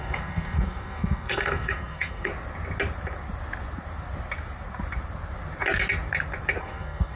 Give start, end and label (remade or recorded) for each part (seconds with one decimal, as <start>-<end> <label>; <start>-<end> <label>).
0.0-2.3 remade; 2.3-6.6 recorded; 6.6-7.2 remade